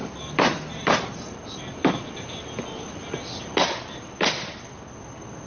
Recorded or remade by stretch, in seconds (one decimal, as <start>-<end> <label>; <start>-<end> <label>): 0.0-1.8 remade; 1.8-3.8 recorded; 3.8-5.5 remade